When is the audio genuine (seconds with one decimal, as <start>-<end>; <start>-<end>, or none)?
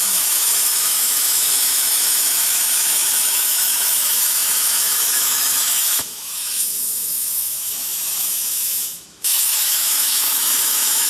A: none